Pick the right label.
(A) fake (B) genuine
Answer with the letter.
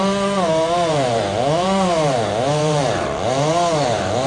A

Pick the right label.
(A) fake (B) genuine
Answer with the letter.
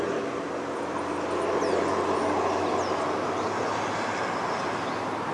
B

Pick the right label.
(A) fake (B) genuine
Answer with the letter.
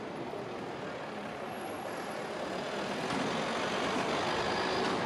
B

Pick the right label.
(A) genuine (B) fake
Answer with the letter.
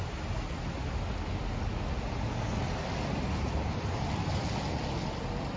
A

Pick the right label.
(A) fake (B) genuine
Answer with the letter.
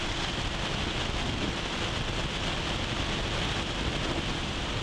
B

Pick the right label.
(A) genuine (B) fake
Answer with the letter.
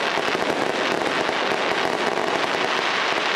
A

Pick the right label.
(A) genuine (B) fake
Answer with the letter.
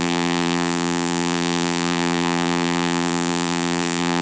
B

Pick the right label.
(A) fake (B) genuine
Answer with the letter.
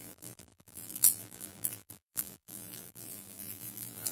A